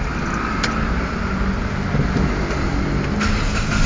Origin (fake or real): real